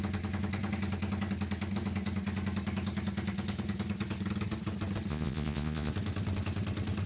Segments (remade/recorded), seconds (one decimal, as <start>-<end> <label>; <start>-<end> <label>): 0.0-5.1 recorded; 5.1-5.9 remade; 5.9-7.1 recorded